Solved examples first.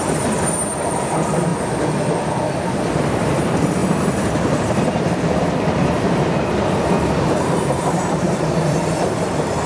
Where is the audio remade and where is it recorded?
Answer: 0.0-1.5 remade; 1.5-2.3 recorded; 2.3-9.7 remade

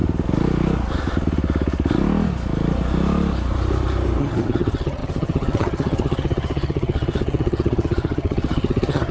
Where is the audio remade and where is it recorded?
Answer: 0.0-4.2 recorded; 4.2-9.1 remade

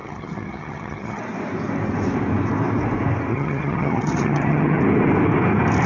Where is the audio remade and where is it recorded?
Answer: 0.0-1.2 remade; 1.2-3.3 recorded; 3.3-4.8 remade; 4.8-5.9 recorded

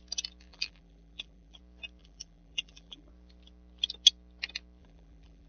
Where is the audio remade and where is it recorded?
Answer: 0.0-0.5 recorded; 0.5-1.6 remade; 1.6-2.0 recorded; 2.0-3.1 remade; 3.1-4.8 recorded; 4.8-5.5 remade

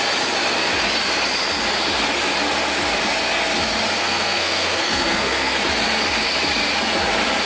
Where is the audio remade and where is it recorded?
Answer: 0.0-4.0 recorded; 4.0-5.6 remade; 5.6-7.5 recorded

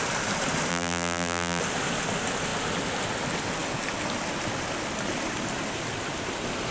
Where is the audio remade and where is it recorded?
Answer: 0.0-0.7 recorded; 0.7-1.6 remade; 1.6-6.7 recorded

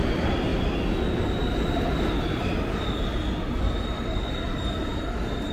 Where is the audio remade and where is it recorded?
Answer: 0.0-5.5 recorded

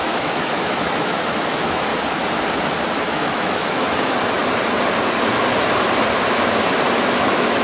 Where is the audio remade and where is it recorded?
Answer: 0.0-1.9 remade; 1.9-3.1 recorded; 3.1-4.4 remade; 4.4-7.0 recorded; 7.0-7.6 remade